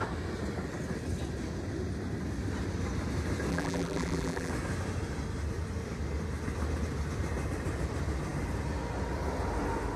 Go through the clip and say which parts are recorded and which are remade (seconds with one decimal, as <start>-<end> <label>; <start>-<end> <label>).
0.0-3.5 recorded; 3.5-4.5 remade; 4.5-10.0 recorded